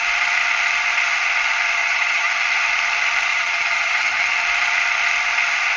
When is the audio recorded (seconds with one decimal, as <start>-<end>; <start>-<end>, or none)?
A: 0.0-1.8; 2.3-3.3; 4.3-5.8